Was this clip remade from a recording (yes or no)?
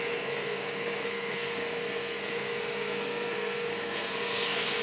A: yes